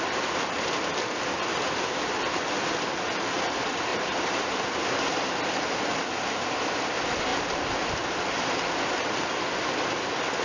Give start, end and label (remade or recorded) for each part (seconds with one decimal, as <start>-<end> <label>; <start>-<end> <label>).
0.0-3.9 recorded; 3.9-4.7 remade; 4.7-10.4 recorded